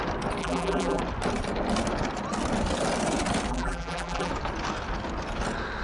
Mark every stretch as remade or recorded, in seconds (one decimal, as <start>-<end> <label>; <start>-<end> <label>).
0.0-0.4 recorded; 0.4-1.0 remade; 1.0-3.5 recorded; 3.5-4.3 remade; 4.3-5.8 recorded